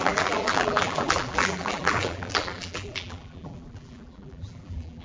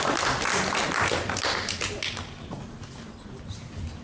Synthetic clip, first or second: first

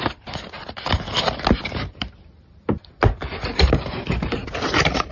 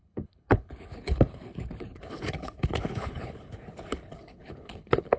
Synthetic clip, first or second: second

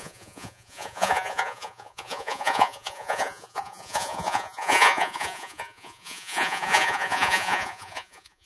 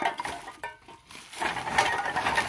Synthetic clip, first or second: first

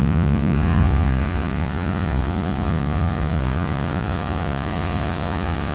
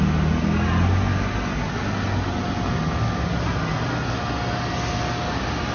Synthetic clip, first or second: first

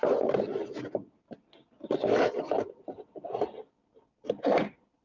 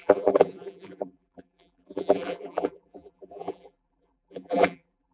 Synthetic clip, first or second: second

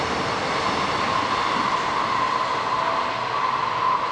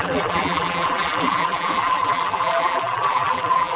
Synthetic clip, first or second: second